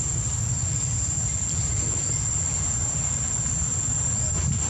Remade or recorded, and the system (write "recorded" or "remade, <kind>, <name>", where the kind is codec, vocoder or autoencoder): recorded